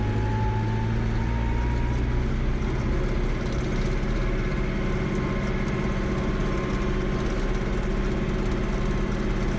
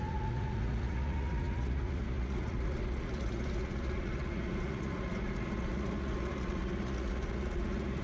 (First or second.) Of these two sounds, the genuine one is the first